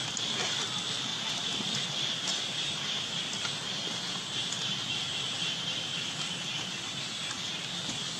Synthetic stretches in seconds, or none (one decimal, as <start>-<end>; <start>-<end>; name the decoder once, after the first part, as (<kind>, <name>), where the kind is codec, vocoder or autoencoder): none